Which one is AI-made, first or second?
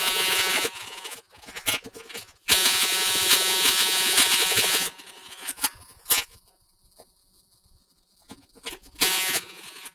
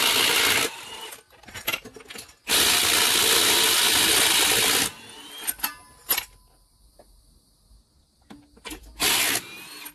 first